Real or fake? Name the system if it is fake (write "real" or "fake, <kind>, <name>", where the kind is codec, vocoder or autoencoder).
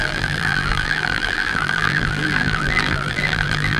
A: fake, vocoder, BigVGAN v2